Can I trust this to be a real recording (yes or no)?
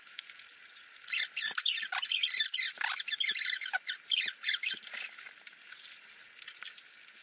yes